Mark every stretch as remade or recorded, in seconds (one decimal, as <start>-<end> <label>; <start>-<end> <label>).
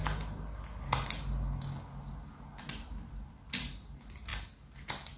0.0-5.2 recorded